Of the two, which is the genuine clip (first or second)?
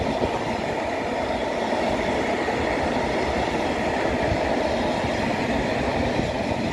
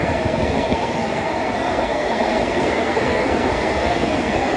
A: first